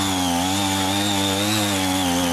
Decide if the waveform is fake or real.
real